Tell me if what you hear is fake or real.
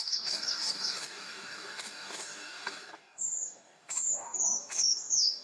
fake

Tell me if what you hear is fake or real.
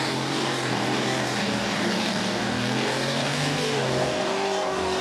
fake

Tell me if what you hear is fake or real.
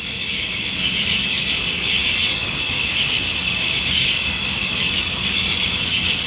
fake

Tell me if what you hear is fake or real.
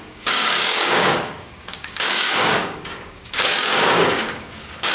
fake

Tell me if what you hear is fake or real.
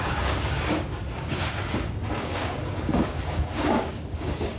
fake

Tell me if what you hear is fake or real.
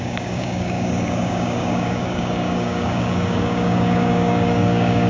fake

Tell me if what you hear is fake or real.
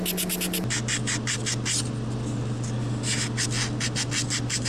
real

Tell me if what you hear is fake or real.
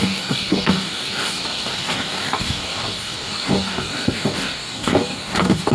fake